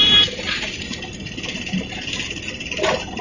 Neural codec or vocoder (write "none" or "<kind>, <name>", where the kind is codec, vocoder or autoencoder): none